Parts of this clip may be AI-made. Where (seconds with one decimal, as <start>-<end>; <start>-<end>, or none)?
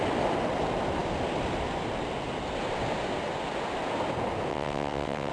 4.5-5.3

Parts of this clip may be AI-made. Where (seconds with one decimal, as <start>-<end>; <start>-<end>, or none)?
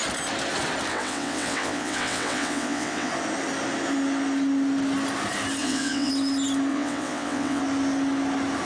0.9-3.1; 5.6-6.1; 6.7-7.6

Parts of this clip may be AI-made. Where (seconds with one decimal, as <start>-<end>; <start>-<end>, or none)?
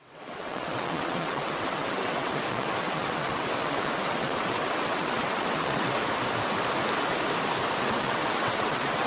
0.0-6.0; 7.8-9.1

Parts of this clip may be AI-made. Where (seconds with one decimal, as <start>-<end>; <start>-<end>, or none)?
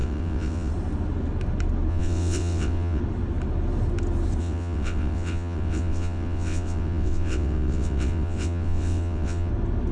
0.0-0.7; 1.9-3.0; 4.4-9.5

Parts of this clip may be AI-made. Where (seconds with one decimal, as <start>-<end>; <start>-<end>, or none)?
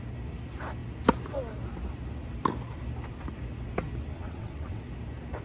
4.1-4.8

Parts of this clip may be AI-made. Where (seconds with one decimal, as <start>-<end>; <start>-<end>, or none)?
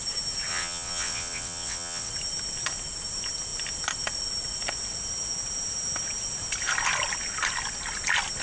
0.5-2.1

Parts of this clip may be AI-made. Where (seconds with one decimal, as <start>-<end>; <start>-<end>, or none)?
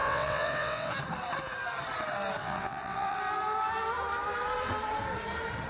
0.0-0.9; 2.4-3.2